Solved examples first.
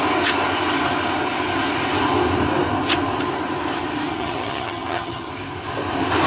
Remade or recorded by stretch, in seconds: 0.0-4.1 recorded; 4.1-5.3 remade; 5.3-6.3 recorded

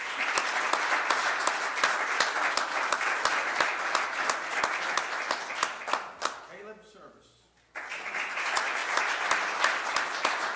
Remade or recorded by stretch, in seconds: 0.0-10.6 recorded

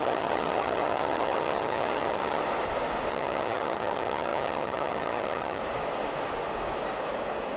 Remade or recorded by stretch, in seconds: 0.0-2.4 remade; 2.4-3.1 recorded; 3.1-5.6 remade; 5.6-7.6 recorded